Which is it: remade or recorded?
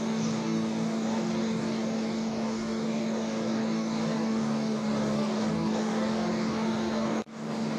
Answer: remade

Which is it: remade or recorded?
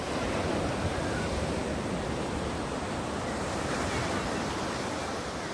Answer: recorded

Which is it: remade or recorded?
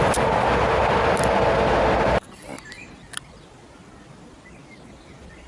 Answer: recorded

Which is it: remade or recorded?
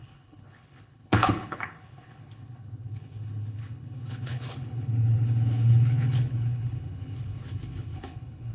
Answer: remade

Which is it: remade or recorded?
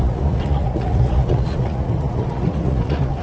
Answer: remade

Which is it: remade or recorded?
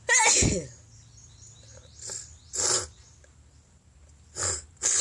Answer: recorded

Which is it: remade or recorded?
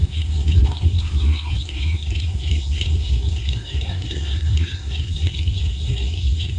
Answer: remade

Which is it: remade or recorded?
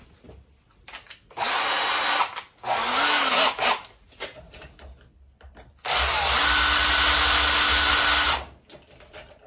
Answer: recorded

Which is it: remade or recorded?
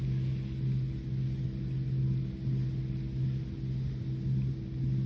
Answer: recorded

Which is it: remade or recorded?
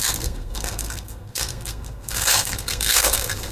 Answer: remade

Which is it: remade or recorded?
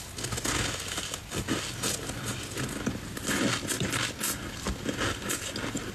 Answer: recorded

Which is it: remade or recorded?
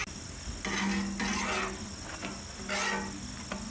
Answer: recorded